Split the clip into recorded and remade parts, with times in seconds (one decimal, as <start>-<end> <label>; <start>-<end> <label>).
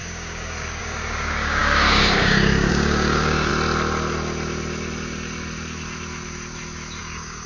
0.0-3.5 remade; 3.5-7.0 recorded; 7.0-7.5 remade